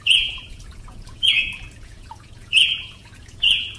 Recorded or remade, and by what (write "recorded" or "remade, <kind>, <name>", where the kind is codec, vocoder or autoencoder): remade, vocoder, Vocos